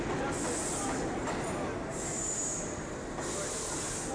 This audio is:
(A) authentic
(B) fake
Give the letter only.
A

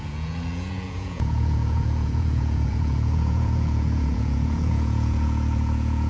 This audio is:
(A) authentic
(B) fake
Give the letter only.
B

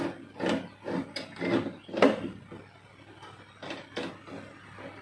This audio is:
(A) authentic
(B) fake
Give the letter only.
A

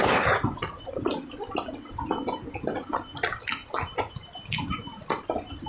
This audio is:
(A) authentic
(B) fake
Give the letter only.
A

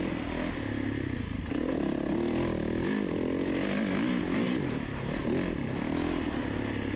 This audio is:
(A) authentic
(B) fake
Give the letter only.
A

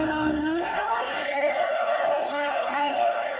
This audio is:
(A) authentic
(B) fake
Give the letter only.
B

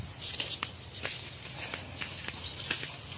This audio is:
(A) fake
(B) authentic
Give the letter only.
B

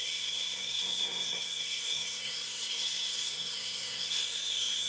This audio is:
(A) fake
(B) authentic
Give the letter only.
A